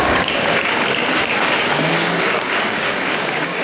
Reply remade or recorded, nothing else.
remade